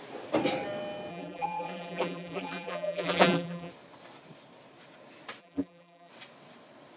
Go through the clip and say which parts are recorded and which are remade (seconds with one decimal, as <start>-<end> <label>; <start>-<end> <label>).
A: 0.0-1.1 recorded; 1.1-3.7 remade; 3.7-5.4 recorded; 5.4-6.1 remade; 6.1-7.0 recorded